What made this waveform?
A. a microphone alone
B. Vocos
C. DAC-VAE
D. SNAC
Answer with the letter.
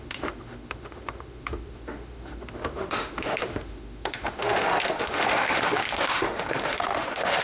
C